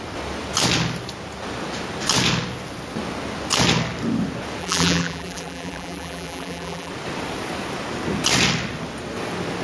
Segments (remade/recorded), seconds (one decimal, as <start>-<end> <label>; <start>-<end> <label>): 0.0-4.6 recorded; 4.6-6.9 remade; 6.9-9.6 recorded